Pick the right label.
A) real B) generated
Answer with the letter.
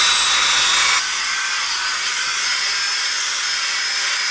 A